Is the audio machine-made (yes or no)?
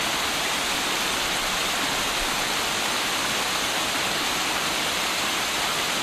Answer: no